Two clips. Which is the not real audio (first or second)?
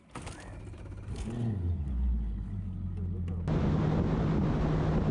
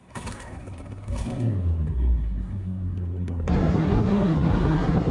second